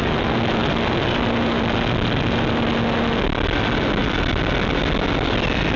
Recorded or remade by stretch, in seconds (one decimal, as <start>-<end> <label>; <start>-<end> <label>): 0.0-5.8 recorded